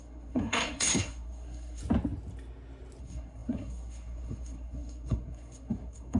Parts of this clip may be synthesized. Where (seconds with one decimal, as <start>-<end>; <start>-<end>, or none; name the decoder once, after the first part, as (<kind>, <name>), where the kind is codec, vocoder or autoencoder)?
0.0-1.8 (codec, SNAC); 3.0-6.2